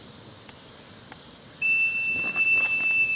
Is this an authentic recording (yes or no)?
yes